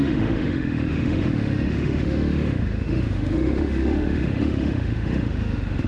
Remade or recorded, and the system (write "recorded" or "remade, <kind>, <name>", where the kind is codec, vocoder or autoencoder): remade, autoencoder, DAC-VAE